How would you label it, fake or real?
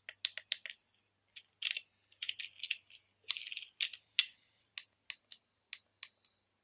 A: real